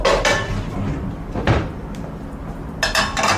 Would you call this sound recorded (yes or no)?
yes